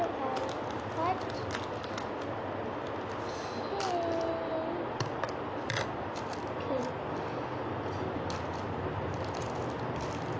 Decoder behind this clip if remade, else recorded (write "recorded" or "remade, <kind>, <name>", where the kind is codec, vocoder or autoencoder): recorded